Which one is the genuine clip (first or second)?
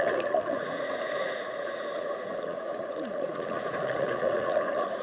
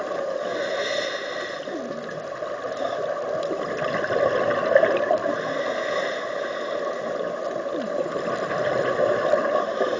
second